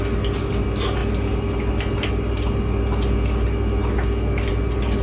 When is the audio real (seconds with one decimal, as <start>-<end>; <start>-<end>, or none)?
0.0-5.0